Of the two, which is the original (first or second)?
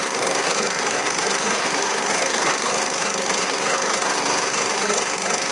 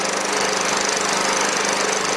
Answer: second